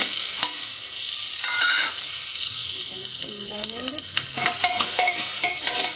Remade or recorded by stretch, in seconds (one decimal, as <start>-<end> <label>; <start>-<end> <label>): 0.0-1.1 remade; 1.1-1.9 recorded; 1.9-6.0 remade

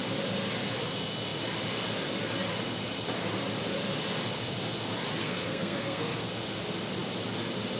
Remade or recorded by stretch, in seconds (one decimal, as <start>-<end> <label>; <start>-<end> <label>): 0.0-5.2 recorded; 5.2-6.2 remade; 6.2-7.8 recorded